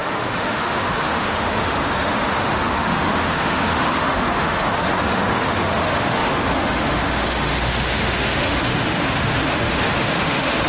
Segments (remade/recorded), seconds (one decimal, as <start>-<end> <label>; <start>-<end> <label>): 0.0-10.7 remade